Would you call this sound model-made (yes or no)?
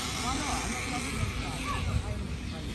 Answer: no